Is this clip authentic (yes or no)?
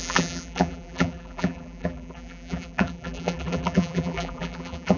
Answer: no